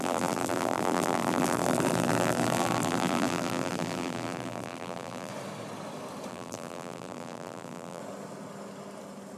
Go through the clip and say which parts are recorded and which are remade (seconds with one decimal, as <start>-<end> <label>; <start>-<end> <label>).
0.0-5.3 remade; 5.3-6.3 recorded; 6.3-8.0 remade; 8.0-9.4 recorded